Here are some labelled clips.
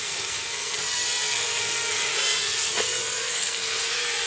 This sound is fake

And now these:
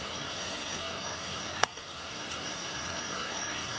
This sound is fake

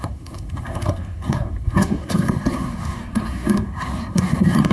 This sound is fake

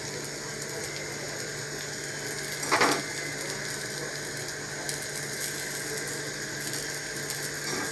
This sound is real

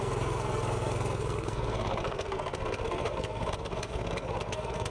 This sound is fake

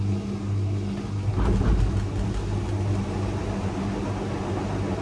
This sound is real